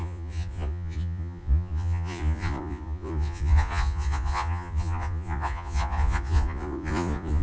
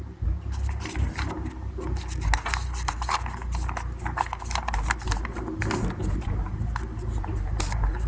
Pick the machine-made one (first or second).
first